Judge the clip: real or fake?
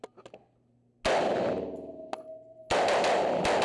real